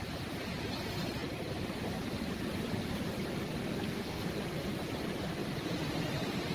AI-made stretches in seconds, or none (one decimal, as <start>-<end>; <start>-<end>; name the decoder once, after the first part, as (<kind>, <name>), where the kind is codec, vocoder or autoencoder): 3.6-4.2 (codec, SNAC)